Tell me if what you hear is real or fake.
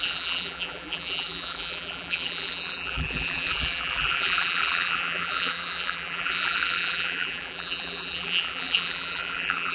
fake